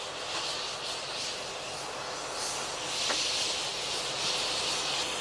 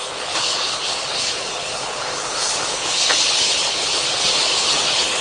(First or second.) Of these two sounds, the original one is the first